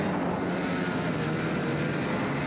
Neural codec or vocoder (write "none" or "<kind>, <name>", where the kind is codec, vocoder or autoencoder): none